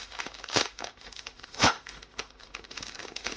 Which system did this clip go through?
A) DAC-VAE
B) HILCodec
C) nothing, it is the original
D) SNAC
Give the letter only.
A